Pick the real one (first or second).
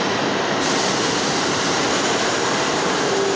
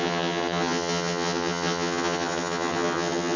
first